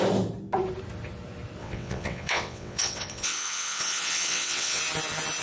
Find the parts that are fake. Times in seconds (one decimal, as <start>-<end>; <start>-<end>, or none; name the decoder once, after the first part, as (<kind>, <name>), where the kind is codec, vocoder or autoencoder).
1.6-4.8 (vocoder, WaveNeXt)